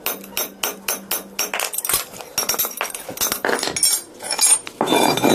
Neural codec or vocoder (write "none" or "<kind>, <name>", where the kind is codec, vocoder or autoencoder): none